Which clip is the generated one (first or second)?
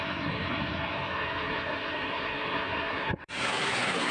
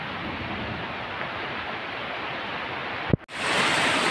first